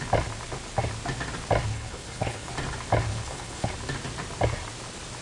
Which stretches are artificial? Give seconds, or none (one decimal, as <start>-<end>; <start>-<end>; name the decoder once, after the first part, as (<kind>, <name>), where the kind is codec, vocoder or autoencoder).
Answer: 1.7-2.5 (codec, HILCodec); 3.1-3.7